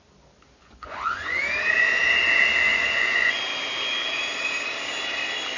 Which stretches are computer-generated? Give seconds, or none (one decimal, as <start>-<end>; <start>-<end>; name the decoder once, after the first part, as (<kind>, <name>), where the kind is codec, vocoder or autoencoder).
0.6-1.4 (vocoder, Vocos); 2.7-3.4